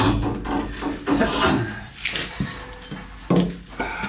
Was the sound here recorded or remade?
recorded